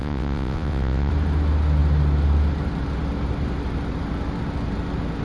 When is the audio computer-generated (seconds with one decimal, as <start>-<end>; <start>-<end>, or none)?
0.0-1.1